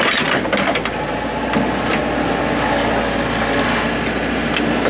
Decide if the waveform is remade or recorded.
recorded